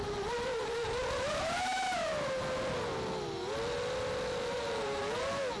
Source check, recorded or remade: recorded